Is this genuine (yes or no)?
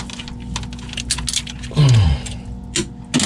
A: yes